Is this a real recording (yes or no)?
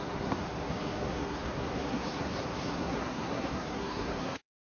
no